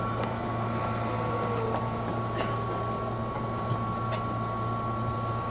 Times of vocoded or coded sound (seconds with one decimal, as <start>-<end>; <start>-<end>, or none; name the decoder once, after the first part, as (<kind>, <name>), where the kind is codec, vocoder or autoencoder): none